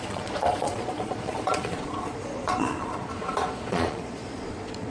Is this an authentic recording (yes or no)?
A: no